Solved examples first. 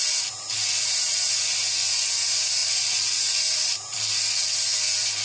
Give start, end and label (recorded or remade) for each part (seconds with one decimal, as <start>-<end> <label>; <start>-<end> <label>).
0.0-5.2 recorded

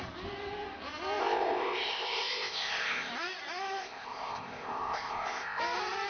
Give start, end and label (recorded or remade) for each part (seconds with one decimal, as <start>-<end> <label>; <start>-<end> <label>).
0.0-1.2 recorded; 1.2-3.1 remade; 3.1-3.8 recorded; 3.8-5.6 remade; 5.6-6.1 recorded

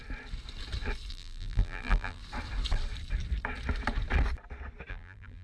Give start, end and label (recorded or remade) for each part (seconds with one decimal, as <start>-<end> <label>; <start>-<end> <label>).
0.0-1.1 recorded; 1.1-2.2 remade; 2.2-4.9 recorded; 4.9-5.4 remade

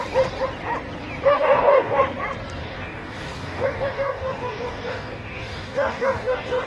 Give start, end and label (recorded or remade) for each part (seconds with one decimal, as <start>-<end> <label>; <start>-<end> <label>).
0.0-1.3 recorded; 1.3-2.0 remade; 2.0-2.6 recorded; 2.6-6.7 remade

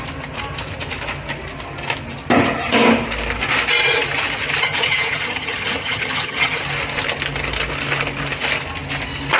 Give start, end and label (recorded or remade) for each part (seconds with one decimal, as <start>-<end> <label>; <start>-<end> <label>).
0.0-4.6 recorded; 4.6-6.6 remade; 6.6-9.4 recorded

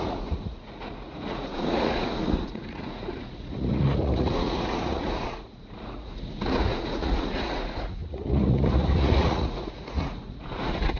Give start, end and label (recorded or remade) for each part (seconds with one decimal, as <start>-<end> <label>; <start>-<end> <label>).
0.0-11.0 remade